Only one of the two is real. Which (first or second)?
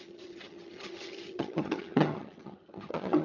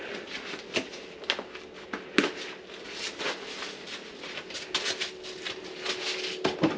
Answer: second